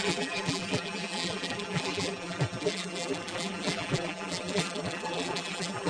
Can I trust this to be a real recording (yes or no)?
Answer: no